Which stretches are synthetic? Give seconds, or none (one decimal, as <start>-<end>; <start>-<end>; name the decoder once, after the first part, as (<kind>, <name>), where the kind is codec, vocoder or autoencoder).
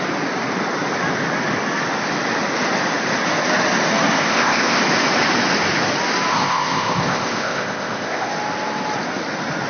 4.3-4.8 (codec, ZipCodec); 6.3-8.3